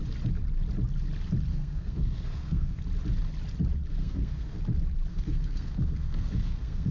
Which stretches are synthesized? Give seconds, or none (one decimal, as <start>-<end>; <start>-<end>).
1.5-2.8; 4.0-4.6; 5.1-6.9